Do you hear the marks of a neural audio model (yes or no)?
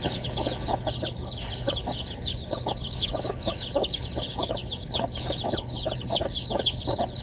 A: yes